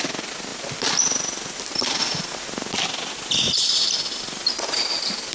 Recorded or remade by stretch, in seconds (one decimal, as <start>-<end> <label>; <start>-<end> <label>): 0.0-5.3 recorded